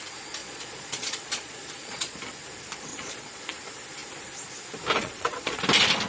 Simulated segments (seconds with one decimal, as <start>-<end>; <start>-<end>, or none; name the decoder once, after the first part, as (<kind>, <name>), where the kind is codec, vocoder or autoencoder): 0.4-2.1 (vocoder, Vocos); 2.9-3.4; 5.0-5.6